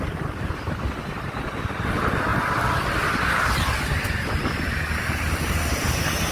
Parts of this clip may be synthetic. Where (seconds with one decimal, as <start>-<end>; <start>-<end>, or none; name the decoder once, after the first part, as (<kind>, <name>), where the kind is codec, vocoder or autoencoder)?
none